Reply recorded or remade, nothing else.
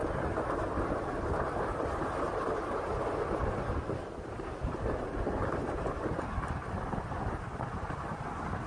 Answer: recorded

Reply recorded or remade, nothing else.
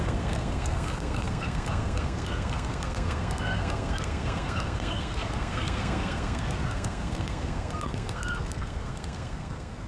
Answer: remade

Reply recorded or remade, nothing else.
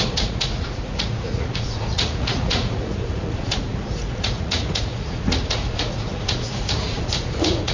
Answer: remade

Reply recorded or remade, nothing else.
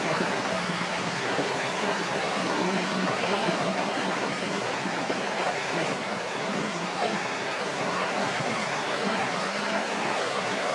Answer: remade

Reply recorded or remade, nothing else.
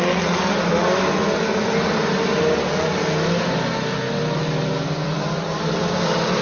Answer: recorded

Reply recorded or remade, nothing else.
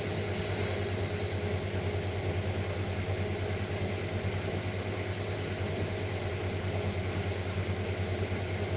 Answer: recorded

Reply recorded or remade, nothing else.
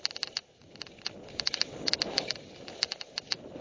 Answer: recorded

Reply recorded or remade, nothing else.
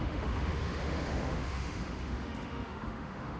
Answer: remade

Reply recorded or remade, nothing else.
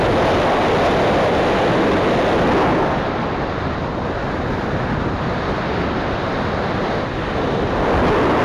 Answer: recorded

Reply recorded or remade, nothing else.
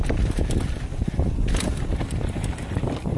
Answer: recorded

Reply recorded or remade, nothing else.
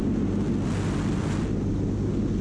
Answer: recorded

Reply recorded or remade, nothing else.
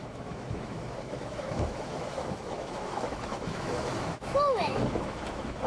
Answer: remade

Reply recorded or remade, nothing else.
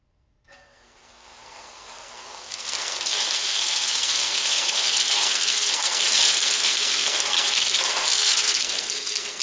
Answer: remade